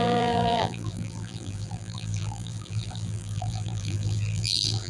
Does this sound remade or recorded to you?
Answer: remade